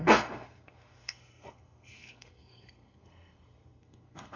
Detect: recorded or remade remade